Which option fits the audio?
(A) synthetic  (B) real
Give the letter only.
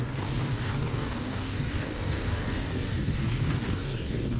A